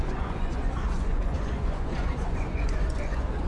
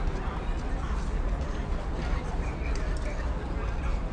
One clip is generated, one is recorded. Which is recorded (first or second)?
second